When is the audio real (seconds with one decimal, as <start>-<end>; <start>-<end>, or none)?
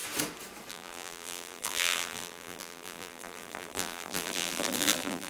0.0-0.7